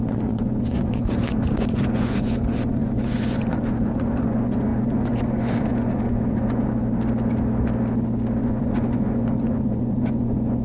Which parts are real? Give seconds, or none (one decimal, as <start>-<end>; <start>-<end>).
6.8-8.4